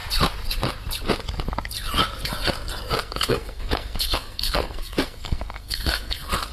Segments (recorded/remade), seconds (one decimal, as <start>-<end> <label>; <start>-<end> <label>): 0.0-3.0 recorded; 3.0-6.5 remade